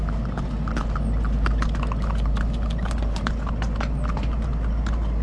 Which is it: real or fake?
real